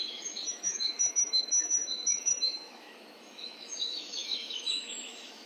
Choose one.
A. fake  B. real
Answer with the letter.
A